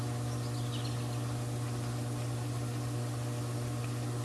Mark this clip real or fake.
real